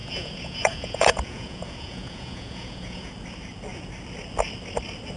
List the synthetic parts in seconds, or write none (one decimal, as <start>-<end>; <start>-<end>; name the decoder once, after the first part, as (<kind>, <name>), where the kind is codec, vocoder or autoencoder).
0.0-3.1 (vocoder, Vocos)